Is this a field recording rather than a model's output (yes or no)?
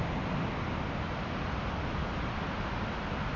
yes